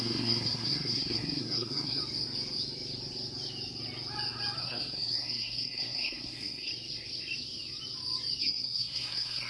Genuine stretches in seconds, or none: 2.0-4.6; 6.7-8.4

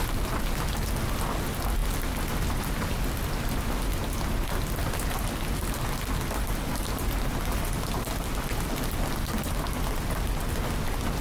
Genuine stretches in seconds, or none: 0.0-11.2

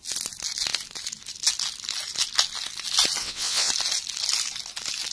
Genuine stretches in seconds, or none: 0.0-3.2; 3.7-5.1

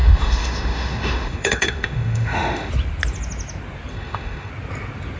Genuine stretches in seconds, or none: 2.7-3.9; 4.5-5.2

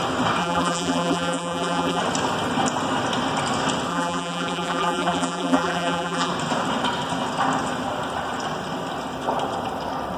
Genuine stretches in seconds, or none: 0.0-0.4; 2.0-3.9; 6.3-10.2

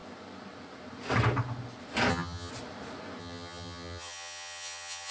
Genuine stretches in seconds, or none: 0.0-2.1; 2.5-3.2

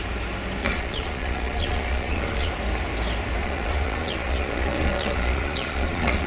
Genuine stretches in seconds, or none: 0.0-0.6; 2.5-3.4

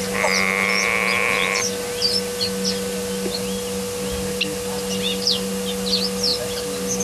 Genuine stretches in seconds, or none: 0.0-7.0